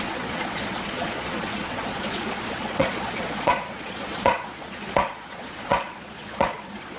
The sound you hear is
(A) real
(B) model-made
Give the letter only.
B